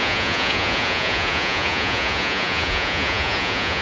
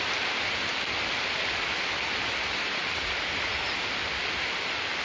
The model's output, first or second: first